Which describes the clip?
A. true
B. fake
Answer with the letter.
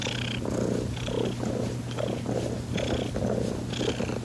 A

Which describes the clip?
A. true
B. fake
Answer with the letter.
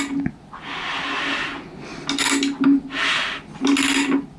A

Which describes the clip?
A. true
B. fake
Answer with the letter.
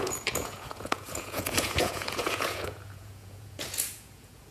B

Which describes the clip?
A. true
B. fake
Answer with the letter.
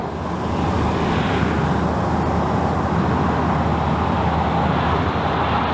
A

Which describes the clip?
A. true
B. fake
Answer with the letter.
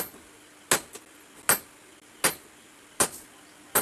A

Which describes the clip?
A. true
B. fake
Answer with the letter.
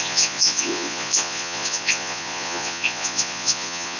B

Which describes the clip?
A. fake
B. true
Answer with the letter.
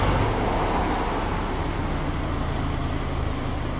B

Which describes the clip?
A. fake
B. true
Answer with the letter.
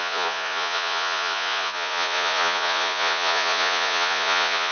A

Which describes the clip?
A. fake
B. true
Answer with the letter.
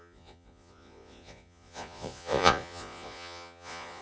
A